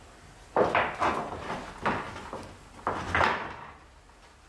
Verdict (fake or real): real